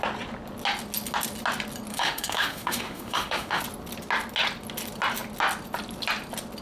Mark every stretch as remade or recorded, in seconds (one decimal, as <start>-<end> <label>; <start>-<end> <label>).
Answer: 0.0-1.9 recorded; 1.9-3.6 remade; 3.6-6.6 recorded